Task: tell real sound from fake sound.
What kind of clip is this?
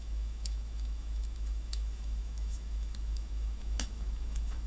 fake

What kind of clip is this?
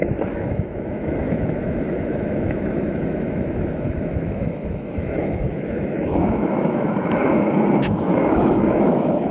fake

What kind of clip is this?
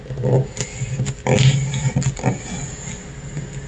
real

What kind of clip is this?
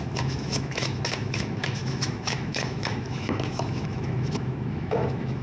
fake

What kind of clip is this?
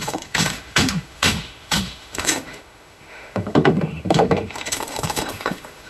fake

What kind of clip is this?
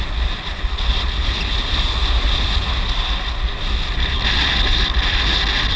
real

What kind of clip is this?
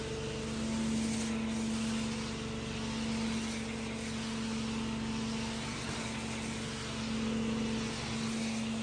real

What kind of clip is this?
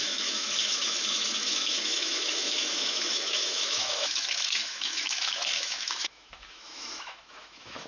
fake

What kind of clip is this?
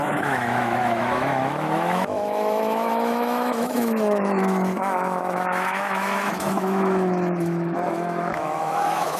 fake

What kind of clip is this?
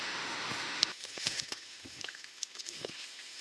fake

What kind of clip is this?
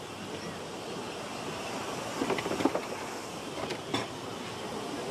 real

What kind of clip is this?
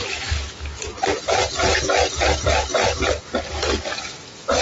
real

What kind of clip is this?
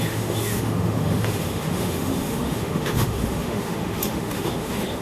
fake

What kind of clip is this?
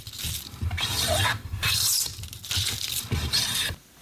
real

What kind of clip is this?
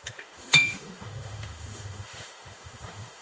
fake